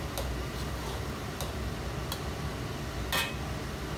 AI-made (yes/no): no